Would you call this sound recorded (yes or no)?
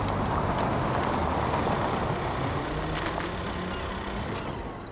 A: yes